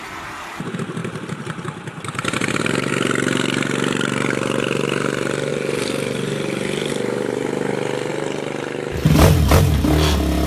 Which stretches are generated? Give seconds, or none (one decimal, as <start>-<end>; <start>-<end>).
1.0-2.9; 5.5-6.9